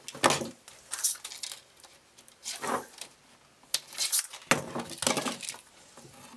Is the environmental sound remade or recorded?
recorded